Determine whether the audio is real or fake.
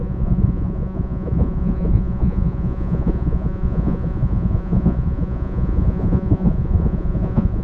fake